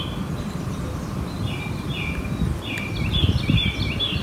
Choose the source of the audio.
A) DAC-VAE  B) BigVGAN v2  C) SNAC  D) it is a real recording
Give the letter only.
D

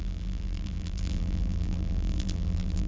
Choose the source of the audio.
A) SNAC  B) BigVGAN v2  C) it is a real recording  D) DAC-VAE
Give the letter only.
B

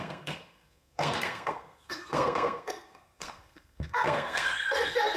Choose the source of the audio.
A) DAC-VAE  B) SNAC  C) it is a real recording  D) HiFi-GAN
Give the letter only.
B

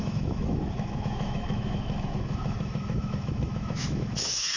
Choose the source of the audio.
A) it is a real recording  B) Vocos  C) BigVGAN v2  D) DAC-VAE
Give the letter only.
D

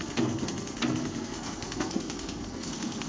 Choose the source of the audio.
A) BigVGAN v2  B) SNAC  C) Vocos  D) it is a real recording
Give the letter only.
B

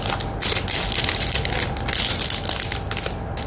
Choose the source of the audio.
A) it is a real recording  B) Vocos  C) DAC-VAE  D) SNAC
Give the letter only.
A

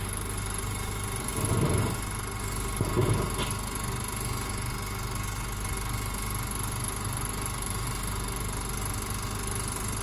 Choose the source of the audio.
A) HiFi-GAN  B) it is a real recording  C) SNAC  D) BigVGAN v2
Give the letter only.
B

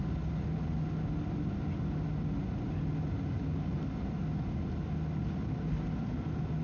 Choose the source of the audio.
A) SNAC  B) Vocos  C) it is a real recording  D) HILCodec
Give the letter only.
C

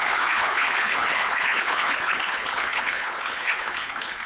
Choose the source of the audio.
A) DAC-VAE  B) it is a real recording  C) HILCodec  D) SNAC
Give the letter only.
C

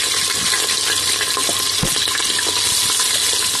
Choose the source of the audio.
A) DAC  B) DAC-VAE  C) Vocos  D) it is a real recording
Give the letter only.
D